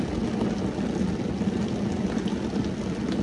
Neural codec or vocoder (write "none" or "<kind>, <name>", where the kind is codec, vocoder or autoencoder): none